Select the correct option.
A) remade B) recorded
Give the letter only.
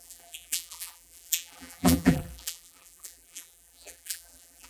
A